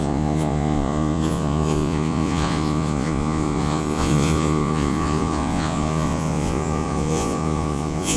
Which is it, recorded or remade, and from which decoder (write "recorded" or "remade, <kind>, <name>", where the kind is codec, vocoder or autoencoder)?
remade, vocoder, Vocos